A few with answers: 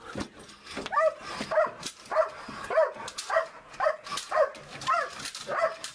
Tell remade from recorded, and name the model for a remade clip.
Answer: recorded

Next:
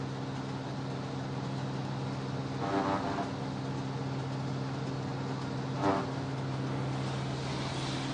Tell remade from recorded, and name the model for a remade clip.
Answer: recorded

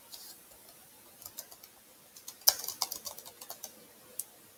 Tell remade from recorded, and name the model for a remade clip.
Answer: recorded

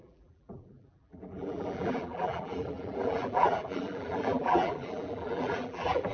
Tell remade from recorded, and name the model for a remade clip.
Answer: remade, vocoder, BigVGAN v2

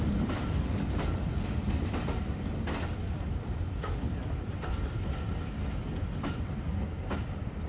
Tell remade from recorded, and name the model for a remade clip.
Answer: recorded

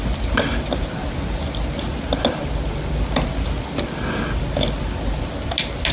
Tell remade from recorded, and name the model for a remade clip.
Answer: recorded